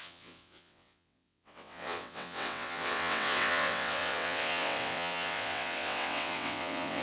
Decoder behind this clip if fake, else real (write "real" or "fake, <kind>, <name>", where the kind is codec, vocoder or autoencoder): fake, vocoder, WaveNeXt